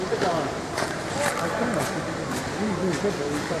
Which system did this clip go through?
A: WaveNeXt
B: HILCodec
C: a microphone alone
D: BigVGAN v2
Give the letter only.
C